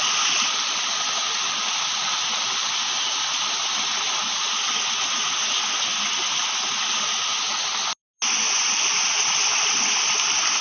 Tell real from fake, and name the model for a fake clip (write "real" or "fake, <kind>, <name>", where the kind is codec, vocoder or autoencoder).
real